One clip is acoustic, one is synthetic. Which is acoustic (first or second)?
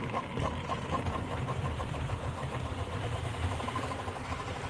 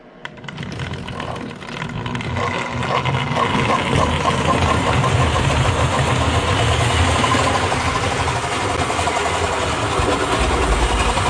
second